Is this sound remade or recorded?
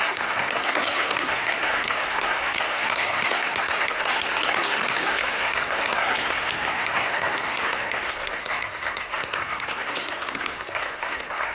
remade